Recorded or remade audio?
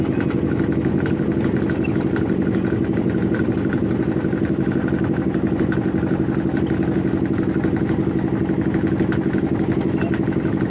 recorded